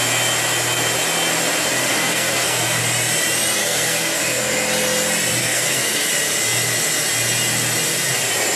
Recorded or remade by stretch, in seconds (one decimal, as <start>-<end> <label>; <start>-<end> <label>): 0.0-1.8 recorded; 1.8-2.8 remade; 2.8-3.6 recorded; 3.6-4.4 remade; 4.4-5.4 recorded; 5.4-6.1 remade; 6.1-8.6 recorded